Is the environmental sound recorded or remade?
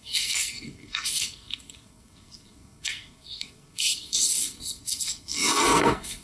remade